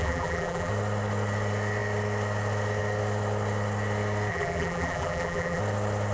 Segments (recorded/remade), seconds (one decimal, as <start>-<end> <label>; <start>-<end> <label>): 0.0-0.7 remade; 0.7-4.3 recorded; 4.3-5.6 remade; 5.6-6.1 recorded